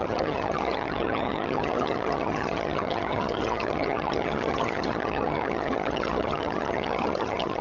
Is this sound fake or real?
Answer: fake